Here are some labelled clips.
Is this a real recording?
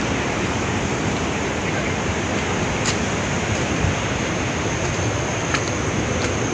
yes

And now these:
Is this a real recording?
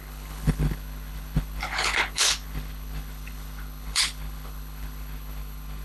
no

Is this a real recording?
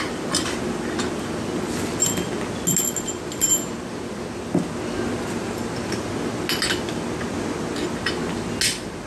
yes